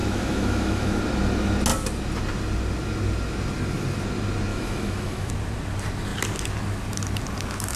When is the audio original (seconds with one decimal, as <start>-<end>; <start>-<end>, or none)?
1.0-4.5; 5.3-7.8

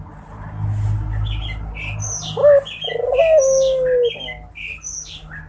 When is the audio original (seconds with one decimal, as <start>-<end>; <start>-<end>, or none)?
0.0-5.5